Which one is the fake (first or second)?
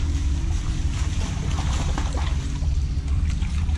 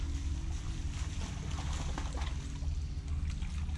first